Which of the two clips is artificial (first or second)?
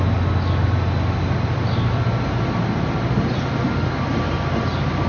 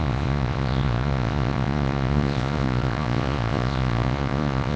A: second